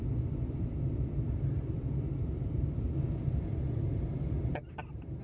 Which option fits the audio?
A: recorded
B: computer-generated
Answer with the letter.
A